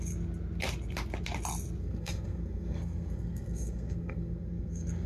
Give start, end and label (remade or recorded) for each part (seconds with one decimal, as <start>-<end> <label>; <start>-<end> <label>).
0.0-1.8 recorded; 1.8-5.1 remade